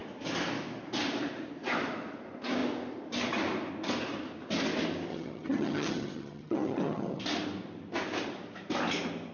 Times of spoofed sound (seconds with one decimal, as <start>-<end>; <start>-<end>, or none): 5.1-7.2